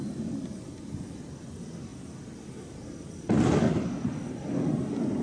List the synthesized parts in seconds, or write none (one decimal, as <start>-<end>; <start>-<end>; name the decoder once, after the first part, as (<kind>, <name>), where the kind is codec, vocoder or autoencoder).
none